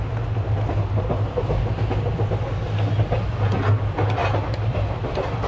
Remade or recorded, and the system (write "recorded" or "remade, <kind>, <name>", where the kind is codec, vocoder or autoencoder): recorded